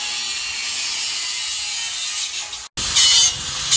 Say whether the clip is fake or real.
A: real